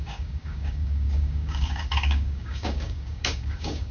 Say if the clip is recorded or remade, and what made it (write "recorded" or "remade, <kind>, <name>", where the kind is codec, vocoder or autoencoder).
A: remade, codec, DAC